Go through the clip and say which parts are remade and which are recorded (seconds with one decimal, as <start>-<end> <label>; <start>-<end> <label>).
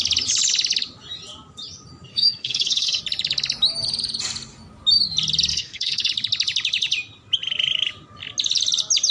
0.0-2.1 recorded; 2.1-3.0 remade; 3.0-5.5 recorded; 5.5-6.1 remade; 6.1-9.1 recorded